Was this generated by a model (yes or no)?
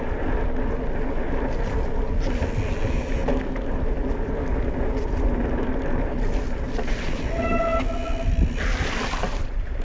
no